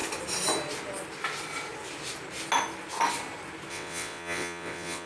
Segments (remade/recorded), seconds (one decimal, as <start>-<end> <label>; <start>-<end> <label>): 0.0-3.7 recorded; 3.7-5.1 remade